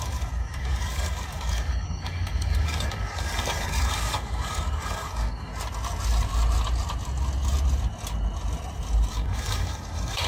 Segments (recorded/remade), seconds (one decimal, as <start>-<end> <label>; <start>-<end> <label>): 0.0-5.5 remade; 5.5-9.1 recorded; 9.1-10.3 remade